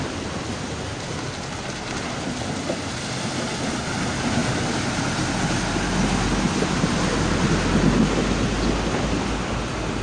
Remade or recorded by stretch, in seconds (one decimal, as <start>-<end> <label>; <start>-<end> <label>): 0.0-10.0 recorded